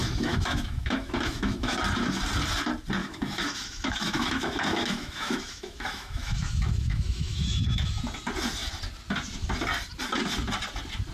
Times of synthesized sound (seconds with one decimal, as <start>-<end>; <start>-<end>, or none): 0.0-1.8; 3.0-8.0